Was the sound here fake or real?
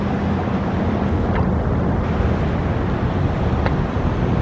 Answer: real